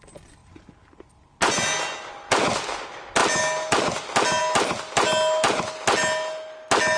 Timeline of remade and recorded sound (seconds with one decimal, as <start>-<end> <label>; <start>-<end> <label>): 0.0-7.0 recorded